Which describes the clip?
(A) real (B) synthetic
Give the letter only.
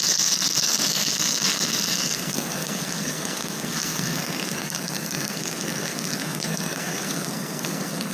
B